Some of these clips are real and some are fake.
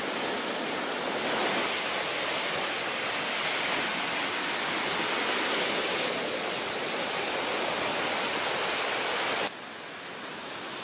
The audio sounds real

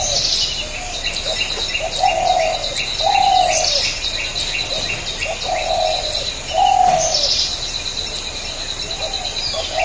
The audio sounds real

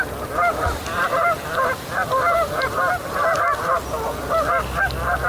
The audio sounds real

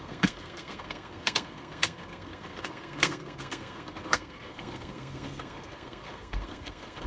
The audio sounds fake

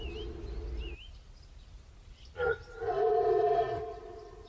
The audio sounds real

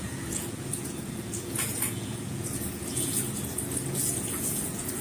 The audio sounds fake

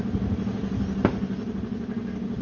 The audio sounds real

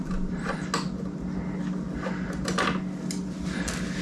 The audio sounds real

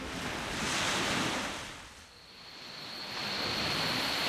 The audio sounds real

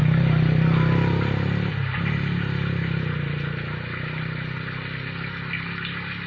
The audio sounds real